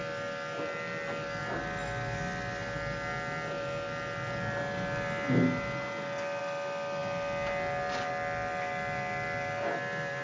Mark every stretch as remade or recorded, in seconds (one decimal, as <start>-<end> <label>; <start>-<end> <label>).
0.0-10.2 recorded